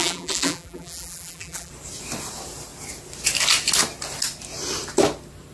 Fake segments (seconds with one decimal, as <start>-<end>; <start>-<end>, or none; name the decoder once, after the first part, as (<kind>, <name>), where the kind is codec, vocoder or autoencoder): 0.0-1.7 (vocoder, BigVGAN v2)